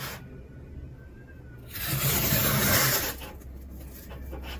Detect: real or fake real